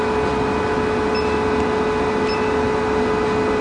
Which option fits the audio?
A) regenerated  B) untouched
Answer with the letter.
B